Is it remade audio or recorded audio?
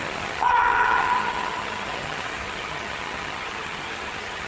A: remade